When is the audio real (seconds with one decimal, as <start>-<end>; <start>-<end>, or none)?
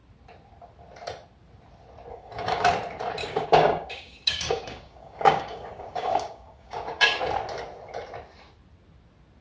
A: 0.0-2.1; 2.7-3.2; 7.2-9.4